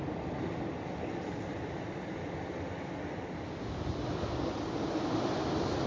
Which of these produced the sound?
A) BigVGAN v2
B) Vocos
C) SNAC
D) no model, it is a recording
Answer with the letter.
D